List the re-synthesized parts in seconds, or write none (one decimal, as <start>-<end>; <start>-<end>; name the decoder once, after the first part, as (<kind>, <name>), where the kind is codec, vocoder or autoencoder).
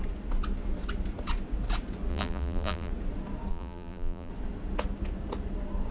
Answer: 2.1-2.9 (vocoder, BigVGAN v2); 3.5-4.3